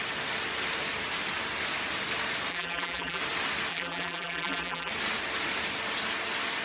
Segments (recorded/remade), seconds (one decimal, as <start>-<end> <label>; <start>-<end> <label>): 0.0-2.5 recorded; 2.5-3.2 remade; 3.2-3.7 recorded; 3.7-4.9 remade; 4.9-6.6 recorded